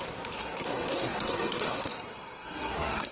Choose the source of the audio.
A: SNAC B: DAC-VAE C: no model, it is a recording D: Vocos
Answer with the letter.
A